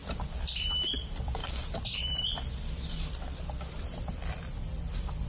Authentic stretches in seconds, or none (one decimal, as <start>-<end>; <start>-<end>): none